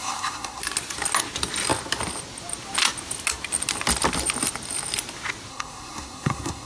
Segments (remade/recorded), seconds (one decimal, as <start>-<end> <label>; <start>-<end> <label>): 0.0-0.6 remade; 0.6-5.5 recorded; 5.5-6.7 remade